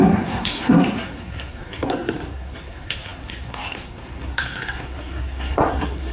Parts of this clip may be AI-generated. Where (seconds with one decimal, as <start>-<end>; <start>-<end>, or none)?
0.0-6.1